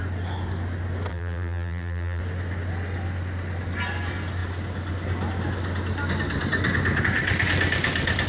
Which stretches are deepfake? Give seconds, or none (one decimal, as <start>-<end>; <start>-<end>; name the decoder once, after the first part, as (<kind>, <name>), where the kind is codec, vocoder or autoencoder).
1.1-2.2 (vocoder, BigVGAN v2)

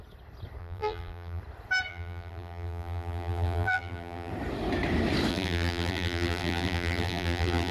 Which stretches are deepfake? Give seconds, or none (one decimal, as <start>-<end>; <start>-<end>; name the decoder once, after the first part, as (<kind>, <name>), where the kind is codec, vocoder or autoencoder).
0.6-1.4 (vocoder, BigVGAN v2); 1.9-4.3; 5.3-7.7

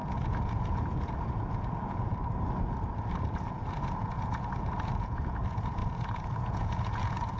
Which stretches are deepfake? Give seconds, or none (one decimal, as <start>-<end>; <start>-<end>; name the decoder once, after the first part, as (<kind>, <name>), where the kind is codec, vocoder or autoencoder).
0.0-2.1 (vocoder, Vocos); 3.2-7.4